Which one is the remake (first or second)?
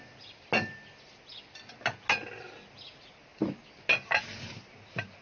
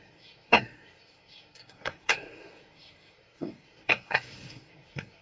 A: second